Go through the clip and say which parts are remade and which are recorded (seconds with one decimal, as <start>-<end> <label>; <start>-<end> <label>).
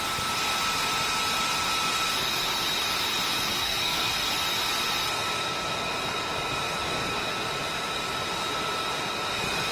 0.0-3.5 recorded; 3.5-4.3 remade; 4.3-9.7 recorded